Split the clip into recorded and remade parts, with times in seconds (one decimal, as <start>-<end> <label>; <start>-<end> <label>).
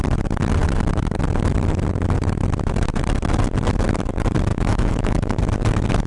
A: 0.0-4.5 recorded; 4.5-5.4 remade; 5.4-6.1 recorded